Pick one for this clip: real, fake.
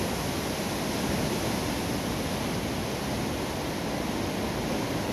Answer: real